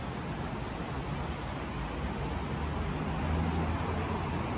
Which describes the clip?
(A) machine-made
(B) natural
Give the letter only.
B